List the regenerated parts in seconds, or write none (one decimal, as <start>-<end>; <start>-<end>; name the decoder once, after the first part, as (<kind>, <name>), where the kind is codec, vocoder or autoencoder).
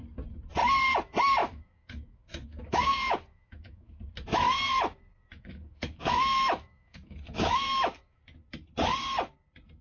1.4-4.0 (autoencoder, DAC-VAE); 5.3-8.2